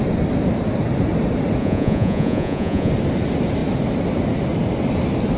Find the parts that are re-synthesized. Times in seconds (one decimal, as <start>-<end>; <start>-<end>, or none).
1.6-2.9